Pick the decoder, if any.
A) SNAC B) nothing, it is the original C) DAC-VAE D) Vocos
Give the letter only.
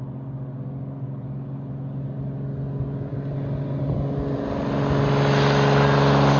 B